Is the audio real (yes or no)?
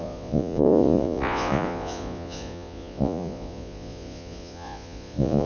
no